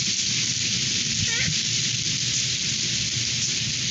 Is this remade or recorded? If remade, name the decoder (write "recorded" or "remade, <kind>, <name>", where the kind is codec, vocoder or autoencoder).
recorded